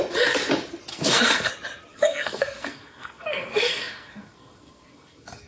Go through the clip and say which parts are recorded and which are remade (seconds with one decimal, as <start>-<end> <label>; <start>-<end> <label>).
0.0-0.9 recorded; 0.9-1.5 remade; 1.5-1.9 recorded; 1.9-5.5 remade